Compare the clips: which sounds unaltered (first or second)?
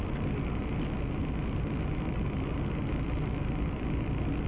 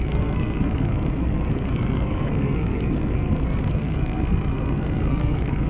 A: first